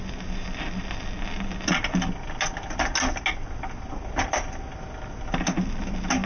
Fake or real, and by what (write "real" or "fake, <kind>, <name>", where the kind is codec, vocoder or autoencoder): real